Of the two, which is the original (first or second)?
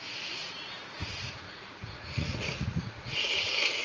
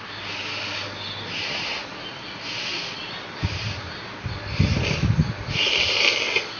second